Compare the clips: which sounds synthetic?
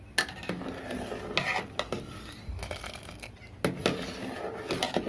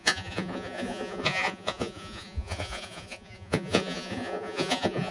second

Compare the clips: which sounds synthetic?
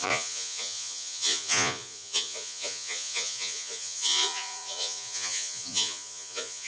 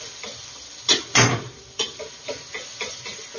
first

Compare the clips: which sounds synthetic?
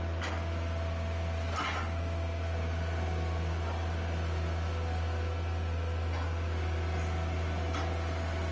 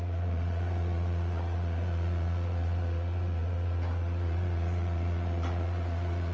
second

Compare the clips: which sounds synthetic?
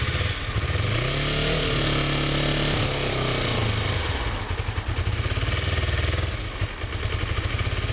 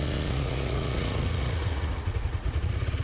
second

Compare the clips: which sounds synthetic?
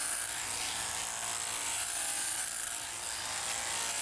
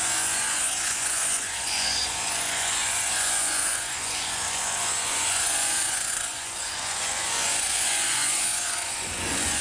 second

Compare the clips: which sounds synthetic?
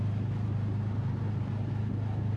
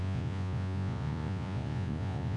second